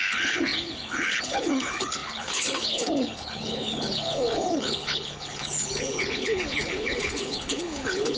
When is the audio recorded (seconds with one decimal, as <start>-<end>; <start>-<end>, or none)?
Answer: none